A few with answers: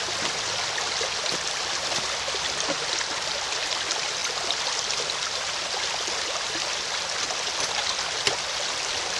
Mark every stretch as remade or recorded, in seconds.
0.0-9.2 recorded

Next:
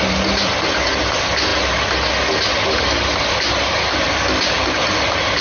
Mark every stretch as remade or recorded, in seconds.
0.0-5.4 recorded

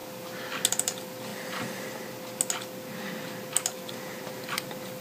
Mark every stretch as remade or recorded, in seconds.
0.0-0.7 recorded; 0.7-1.3 remade; 1.3-4.3 recorded; 4.3-5.0 remade

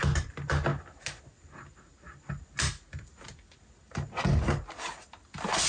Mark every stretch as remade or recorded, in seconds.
0.0-5.7 recorded

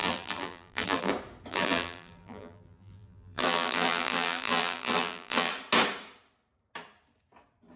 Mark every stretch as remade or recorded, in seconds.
0.0-1.1 remade; 1.1-1.5 recorded; 1.5-5.5 remade; 5.5-7.8 recorded